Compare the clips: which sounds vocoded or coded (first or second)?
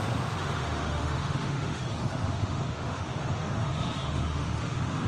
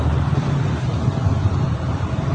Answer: first